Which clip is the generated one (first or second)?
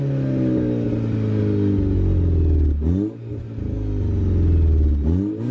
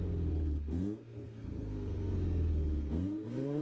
second